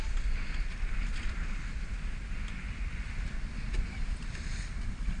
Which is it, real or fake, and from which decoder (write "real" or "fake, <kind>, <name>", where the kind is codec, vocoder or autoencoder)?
real